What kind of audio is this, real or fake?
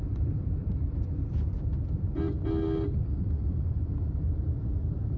real